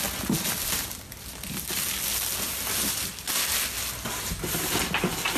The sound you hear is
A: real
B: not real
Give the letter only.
A